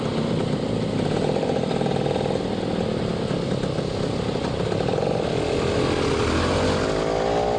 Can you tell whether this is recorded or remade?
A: recorded